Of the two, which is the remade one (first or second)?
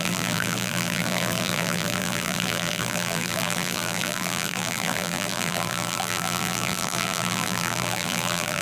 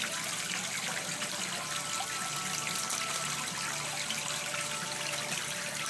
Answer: first